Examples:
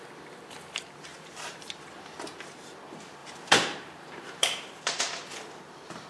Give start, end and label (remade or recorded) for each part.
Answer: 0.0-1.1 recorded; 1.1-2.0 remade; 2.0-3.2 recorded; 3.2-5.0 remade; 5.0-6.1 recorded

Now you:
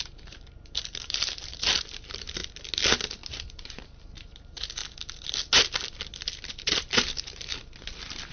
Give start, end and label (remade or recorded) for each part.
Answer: 0.0-2.4 remade; 2.4-3.3 recorded; 3.3-4.8 remade; 4.8-6.6 recorded; 6.6-7.5 remade; 7.5-8.3 recorded

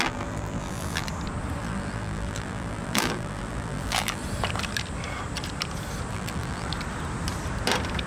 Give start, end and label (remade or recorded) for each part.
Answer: 0.0-1.1 remade; 1.1-1.6 recorded; 1.6-4.2 remade; 4.2-6.1 recorded; 6.1-6.7 remade; 6.7-8.1 recorded

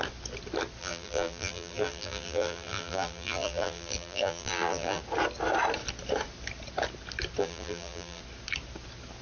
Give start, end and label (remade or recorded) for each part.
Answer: 0.0-0.8 recorded; 0.8-5.0 remade; 5.0-7.4 recorded; 7.4-8.2 remade; 8.2-9.2 recorded

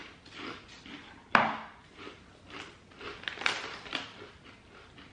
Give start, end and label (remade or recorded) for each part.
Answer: 0.0-0.6 remade; 0.6-1.8 recorded; 1.8-5.1 remade

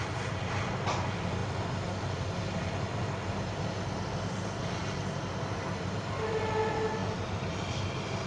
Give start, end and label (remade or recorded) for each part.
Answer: 0.0-8.3 recorded

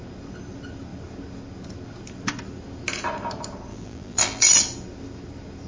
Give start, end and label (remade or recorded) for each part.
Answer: 0.0-3.7 recorded; 3.7-4.6 remade; 4.6-5.7 recorded

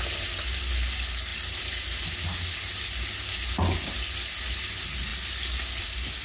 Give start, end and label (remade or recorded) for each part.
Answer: 0.0-1.3 recorded; 1.3-2.0 remade; 2.0-6.2 recorded